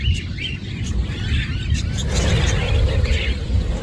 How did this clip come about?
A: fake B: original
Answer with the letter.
B